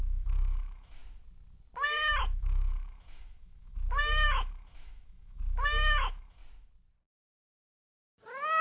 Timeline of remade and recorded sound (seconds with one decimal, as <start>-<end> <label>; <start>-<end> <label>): 0.0-1.0 remade; 1.0-2.2 recorded; 2.2-6.4 remade; 6.4-8.6 recorded